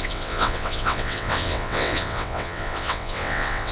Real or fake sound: fake